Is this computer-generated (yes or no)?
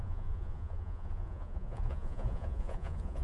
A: yes